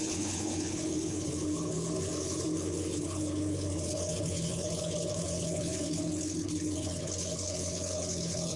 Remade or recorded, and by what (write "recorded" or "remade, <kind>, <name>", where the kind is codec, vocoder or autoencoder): remade, codec, HILCodec